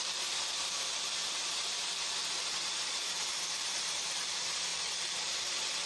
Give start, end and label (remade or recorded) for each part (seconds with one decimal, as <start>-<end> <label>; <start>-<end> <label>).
0.0-1.2 remade; 1.2-3.3 recorded; 3.3-5.9 remade